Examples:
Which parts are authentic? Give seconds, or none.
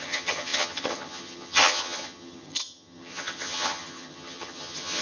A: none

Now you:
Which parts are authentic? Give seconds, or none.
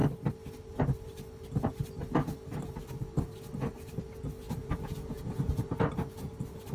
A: 0.0-4.6; 5.8-6.7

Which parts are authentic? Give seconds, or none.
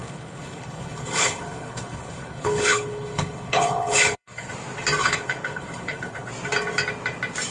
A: 4.5-5.0; 6.3-7.5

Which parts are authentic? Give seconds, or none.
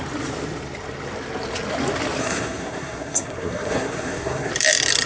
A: 0.0-2.2; 4.5-5.1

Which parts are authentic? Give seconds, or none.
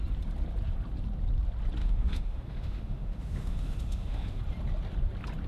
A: 0.0-1.8; 4.4-5.5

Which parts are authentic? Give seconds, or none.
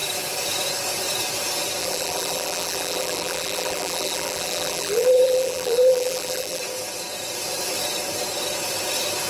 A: 0.0-1.8; 6.6-9.3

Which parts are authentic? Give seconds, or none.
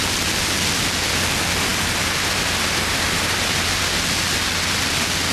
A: 0.0-5.3